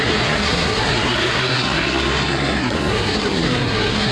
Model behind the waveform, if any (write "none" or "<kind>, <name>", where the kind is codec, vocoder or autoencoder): codec, SNAC